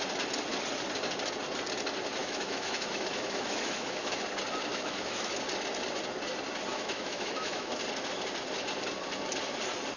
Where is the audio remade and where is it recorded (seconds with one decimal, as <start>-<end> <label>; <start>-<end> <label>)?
0.0-2.2 recorded; 2.2-4.2 remade; 4.2-4.7 recorded; 4.7-5.3 remade; 5.3-6.7 recorded; 6.7-7.8 remade; 7.8-10.0 recorded